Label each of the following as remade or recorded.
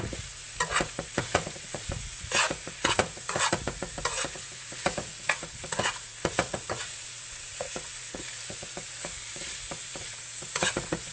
remade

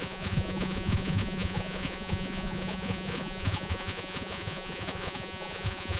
remade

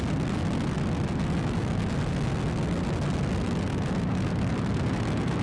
recorded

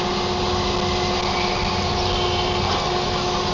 recorded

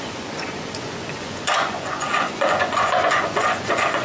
remade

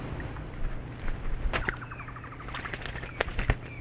recorded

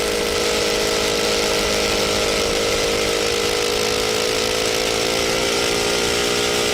recorded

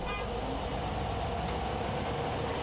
recorded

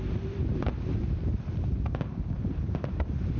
recorded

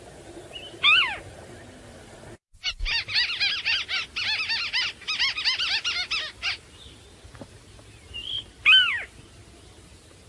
recorded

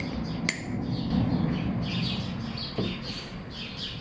recorded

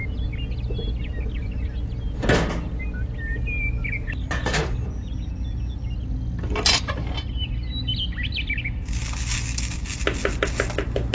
recorded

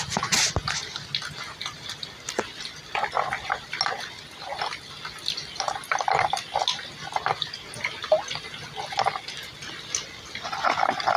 recorded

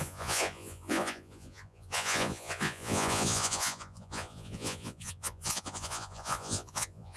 remade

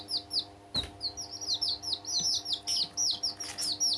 recorded